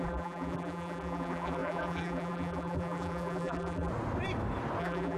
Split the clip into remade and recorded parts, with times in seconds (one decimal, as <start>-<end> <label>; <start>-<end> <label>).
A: 0.0-3.9 remade; 3.9-4.8 recorded; 4.8-5.2 remade